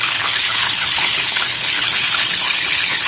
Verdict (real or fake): fake